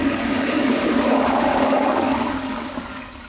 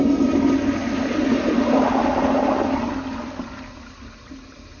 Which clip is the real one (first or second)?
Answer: second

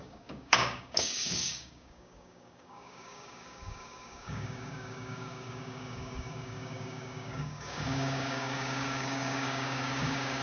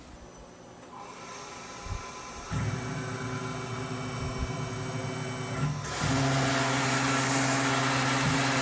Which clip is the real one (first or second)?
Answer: second